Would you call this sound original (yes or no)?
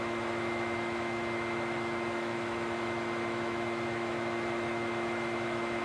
no